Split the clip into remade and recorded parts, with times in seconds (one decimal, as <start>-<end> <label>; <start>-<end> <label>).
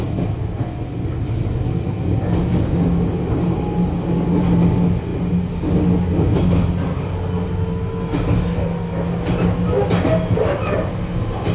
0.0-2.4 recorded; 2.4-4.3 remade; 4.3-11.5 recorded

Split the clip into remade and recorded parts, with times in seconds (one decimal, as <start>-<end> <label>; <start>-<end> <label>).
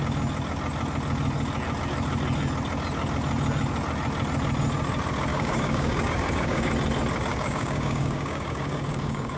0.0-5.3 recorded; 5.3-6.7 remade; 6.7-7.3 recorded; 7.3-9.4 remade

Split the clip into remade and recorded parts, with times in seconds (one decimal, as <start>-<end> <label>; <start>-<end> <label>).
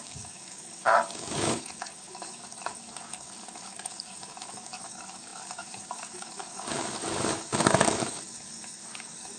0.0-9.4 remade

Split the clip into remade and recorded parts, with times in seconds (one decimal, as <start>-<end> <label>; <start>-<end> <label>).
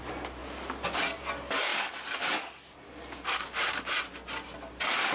0.0-5.1 recorded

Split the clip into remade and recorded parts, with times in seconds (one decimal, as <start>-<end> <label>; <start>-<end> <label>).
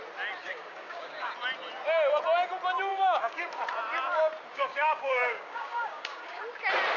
0.0-0.4 recorded; 0.4-1.3 remade; 1.3-2.9 recorded; 2.9-3.5 remade; 3.5-4.5 recorded; 4.5-6.4 remade; 6.4-7.0 recorded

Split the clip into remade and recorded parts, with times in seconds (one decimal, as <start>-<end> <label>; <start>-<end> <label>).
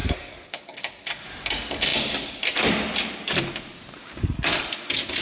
0.0-0.6 remade; 0.6-5.2 recorded